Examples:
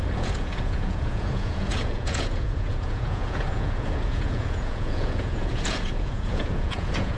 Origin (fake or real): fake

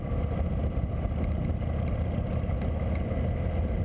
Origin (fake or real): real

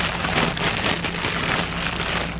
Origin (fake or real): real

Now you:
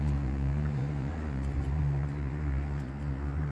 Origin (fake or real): fake